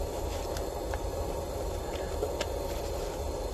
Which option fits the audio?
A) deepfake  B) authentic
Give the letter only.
B